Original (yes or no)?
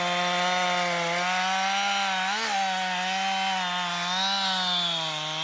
yes